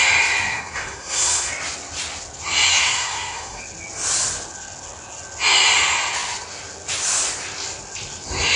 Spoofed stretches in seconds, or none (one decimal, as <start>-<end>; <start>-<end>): 0.5-1.5; 2.7-3.6